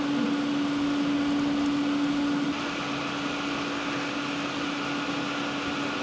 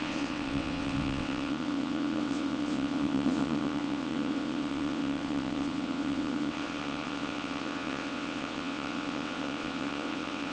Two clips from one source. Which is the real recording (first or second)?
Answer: first